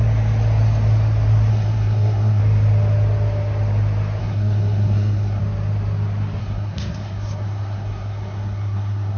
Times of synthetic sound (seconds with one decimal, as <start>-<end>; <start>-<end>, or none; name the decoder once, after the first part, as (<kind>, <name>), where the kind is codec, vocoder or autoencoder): 1.5-2.4 (codec, SNAC); 4.2-5.4; 6.4-9.2